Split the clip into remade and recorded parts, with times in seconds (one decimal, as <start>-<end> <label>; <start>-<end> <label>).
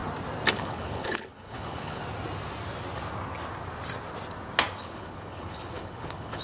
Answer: 0.0-0.5 recorded; 0.5-2.0 remade; 2.0-4.8 recorded; 4.8-6.4 remade